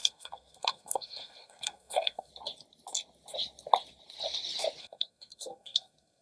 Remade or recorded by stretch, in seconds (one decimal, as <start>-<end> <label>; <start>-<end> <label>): 0.0-2.3 remade; 2.3-4.8 recorded; 4.8-6.2 remade